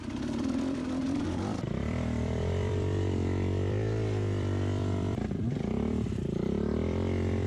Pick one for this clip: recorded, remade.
remade